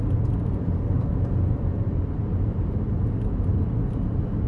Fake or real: real